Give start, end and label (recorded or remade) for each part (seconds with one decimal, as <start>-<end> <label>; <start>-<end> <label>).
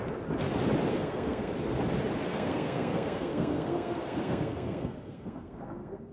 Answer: 0.0-0.9 recorded; 0.9-1.5 remade; 1.5-2.3 recorded; 2.3-6.1 remade